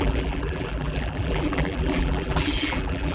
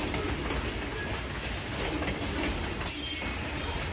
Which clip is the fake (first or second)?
first